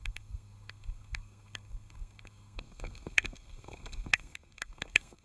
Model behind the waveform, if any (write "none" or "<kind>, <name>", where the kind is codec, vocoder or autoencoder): codec, SNAC